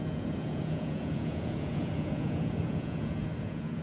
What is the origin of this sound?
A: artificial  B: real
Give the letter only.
A